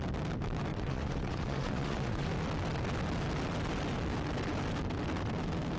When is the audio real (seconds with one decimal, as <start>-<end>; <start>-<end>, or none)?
0.0-0.7; 2.3-5.8